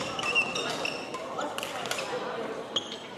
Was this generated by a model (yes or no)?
no